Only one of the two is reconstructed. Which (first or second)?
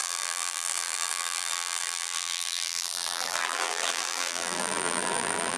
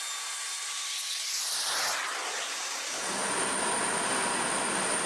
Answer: first